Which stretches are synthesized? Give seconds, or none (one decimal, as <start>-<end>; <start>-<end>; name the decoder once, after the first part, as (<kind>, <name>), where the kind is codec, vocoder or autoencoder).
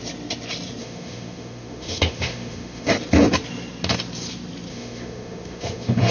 0.8-2.9 (autoencoder, DAC-VAE); 4.7-6.1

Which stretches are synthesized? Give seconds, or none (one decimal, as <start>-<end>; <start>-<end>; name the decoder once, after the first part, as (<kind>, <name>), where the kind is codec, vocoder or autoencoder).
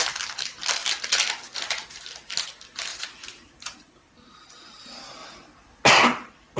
2.9-3.9 (vocoder, BigVGAN v2)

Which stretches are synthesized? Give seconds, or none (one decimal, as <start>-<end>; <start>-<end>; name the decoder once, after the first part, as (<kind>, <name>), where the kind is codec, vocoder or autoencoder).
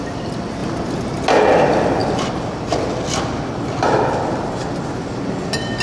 none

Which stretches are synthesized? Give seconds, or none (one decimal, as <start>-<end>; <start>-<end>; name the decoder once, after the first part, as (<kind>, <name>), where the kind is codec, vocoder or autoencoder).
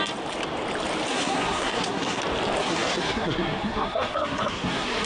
1.1-2.2 (codec, SNAC); 2.6-5.1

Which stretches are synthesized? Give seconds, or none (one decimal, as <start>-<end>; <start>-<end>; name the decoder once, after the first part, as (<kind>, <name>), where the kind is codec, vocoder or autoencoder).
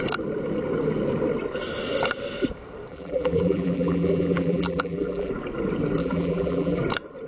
2.9-5.3 (vocoder, BigVGAN v2); 6.0-6.8